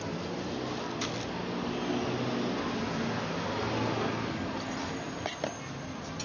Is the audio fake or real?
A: real